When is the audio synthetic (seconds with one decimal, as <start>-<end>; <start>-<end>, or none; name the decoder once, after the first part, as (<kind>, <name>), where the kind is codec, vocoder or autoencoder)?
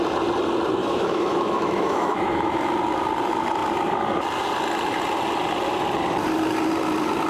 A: 0.8-2.6 (autoencoder, DAC-VAE)